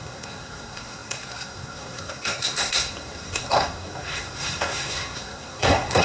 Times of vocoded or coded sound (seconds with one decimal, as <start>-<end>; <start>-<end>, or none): 0.0-6.0